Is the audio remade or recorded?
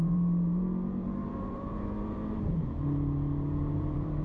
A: remade